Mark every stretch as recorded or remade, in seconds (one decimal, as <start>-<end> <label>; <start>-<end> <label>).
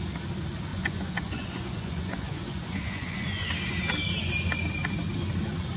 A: 0.0-0.7 recorded; 0.7-3.5 remade; 3.5-5.8 recorded